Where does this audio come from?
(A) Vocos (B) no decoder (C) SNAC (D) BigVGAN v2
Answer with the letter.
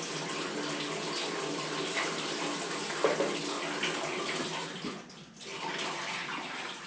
B